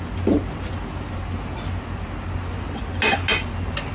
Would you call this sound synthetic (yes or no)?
no